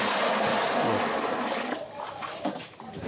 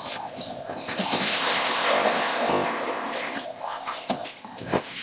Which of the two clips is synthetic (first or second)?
second